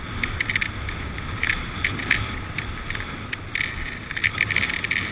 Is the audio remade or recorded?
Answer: recorded